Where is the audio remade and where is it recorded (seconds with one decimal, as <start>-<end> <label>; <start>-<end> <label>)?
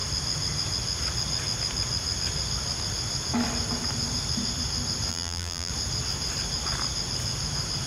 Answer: 0.0-5.1 recorded; 5.1-5.7 remade; 5.7-7.9 recorded